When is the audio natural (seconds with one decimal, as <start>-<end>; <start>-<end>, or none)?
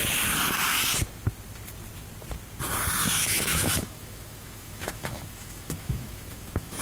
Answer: 0.0-3.2